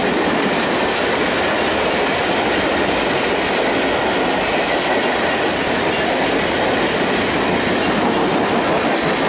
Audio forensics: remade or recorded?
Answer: recorded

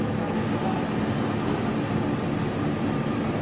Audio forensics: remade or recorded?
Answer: recorded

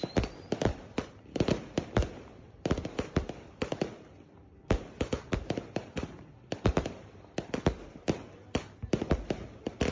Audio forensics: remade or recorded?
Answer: remade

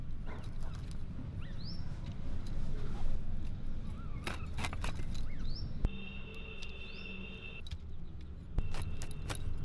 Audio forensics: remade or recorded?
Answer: recorded